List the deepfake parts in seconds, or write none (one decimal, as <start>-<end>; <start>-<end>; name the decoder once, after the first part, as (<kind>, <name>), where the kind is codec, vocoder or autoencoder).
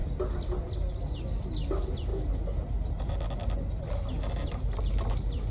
none